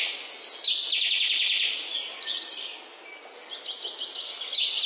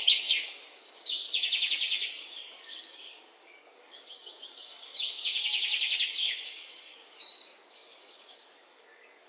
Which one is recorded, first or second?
first